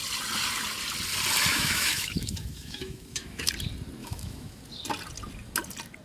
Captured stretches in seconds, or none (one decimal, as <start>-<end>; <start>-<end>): 0.0-1.5; 3.5-4.0; 4.6-6.0